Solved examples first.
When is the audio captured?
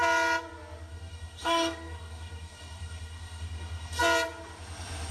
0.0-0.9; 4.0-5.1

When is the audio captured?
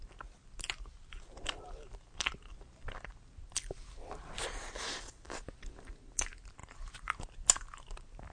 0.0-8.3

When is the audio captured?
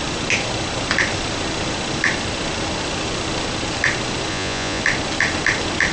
0.0-4.3; 4.8-5.9